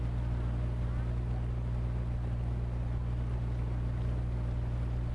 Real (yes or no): yes